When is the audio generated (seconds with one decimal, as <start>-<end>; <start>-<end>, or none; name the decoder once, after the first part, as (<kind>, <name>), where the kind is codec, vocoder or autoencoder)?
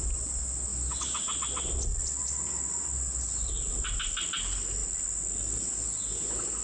none